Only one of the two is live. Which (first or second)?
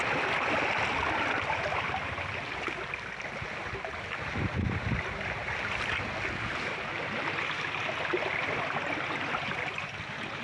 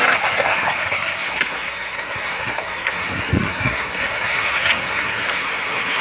first